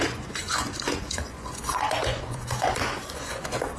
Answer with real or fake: fake